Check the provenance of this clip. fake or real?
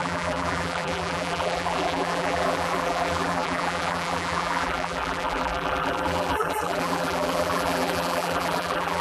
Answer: fake